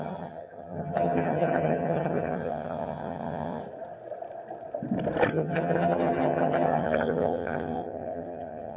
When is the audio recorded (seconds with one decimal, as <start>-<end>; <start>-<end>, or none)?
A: 3.6-5.3